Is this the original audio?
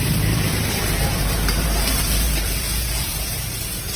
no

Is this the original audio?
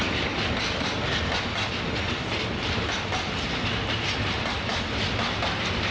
yes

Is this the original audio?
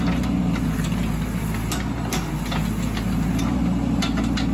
yes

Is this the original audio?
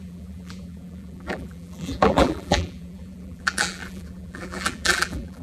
no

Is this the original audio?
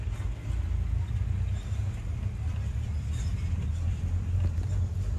yes